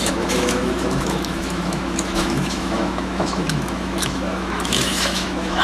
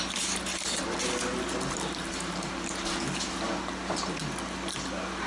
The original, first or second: second